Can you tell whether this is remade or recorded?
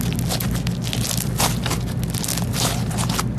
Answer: recorded